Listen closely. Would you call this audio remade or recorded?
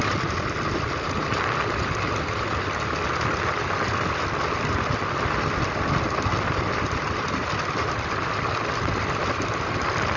recorded